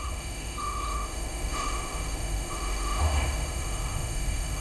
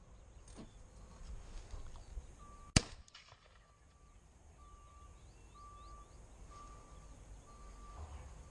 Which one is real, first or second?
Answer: second